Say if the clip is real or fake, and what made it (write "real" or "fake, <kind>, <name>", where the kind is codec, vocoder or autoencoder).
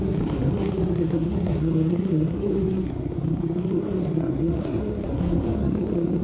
fake, codec, SNAC